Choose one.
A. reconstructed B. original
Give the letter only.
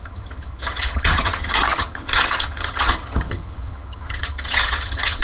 A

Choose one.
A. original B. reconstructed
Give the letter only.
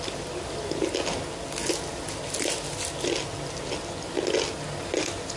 A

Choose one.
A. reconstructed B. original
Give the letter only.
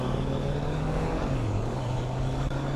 A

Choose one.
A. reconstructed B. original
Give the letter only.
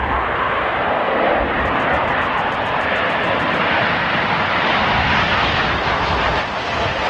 B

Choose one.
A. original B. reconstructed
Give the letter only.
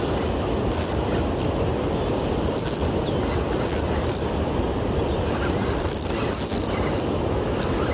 A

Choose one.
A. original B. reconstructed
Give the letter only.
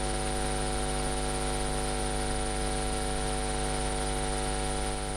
A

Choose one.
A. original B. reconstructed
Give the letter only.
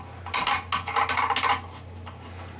A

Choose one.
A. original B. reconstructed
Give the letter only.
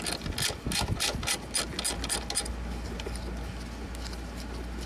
A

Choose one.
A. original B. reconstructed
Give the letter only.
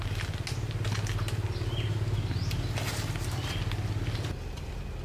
A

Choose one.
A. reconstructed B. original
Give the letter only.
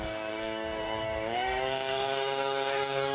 A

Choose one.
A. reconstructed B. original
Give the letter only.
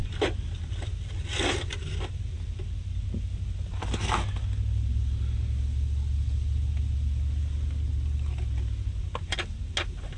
B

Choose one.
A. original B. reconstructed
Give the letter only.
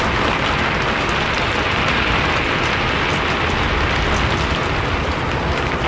A